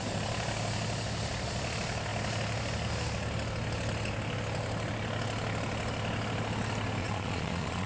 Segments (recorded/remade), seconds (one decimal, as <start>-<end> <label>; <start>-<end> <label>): 0.0-7.0 recorded; 7.0-7.9 remade